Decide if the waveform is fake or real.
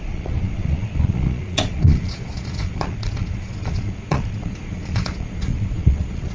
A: fake